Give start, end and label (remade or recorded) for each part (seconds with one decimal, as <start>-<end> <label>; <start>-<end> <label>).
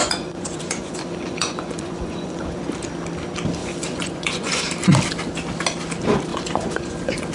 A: 0.0-2.6 remade; 2.6-3.6 recorded; 3.6-4.6 remade; 4.6-6.3 recorded; 6.3-7.3 remade